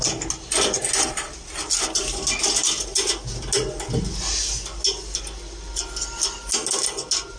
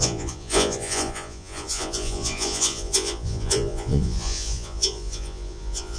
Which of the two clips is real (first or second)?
first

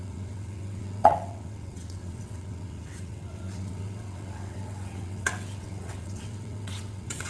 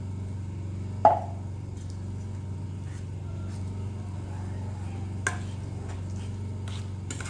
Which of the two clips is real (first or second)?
second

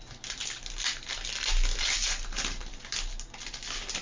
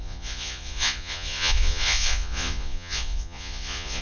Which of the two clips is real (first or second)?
first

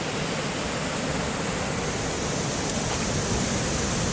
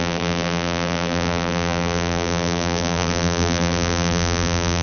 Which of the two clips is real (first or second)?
first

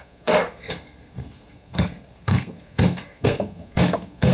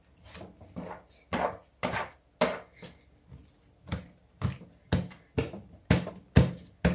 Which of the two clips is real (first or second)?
second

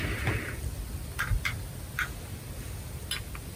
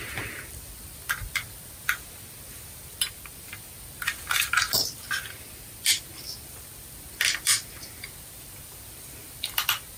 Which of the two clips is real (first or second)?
first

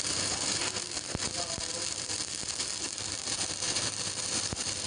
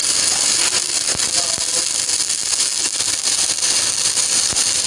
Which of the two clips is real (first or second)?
second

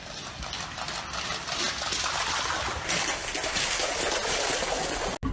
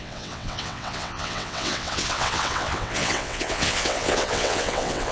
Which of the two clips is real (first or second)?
first